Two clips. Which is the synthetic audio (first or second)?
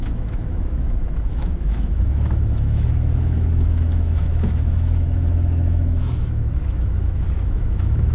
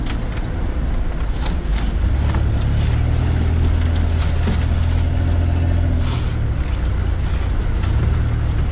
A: first